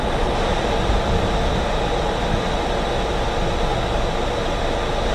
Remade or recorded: recorded